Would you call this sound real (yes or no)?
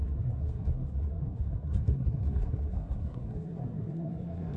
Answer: no